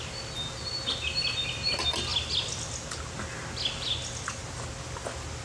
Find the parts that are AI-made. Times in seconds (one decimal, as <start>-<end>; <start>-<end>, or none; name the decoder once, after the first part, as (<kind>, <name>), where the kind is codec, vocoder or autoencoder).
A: none